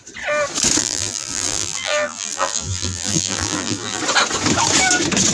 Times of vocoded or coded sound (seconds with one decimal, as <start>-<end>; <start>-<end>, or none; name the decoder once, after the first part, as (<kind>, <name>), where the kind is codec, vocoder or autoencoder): 0.8-4.0 (vocoder, BigVGAN v2)